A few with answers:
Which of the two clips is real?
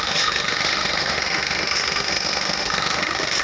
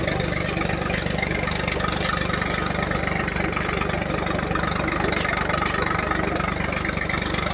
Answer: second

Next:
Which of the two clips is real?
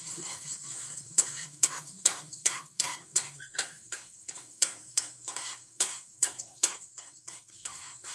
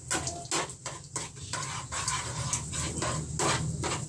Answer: second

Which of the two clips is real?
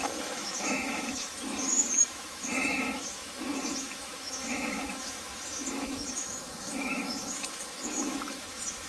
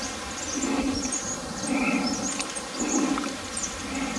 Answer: second